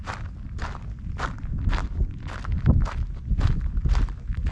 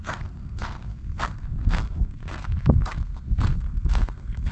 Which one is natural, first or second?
first